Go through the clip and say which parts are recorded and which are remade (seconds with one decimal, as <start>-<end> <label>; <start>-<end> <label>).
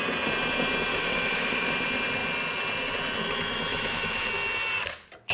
0.0-0.9 recorded; 0.9-1.7 remade; 1.7-3.7 recorded; 3.7-4.3 remade; 4.3-5.3 recorded